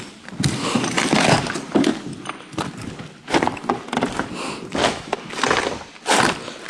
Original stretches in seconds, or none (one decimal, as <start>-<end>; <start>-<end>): 0.0-6.7